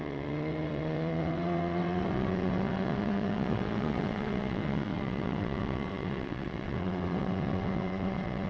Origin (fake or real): fake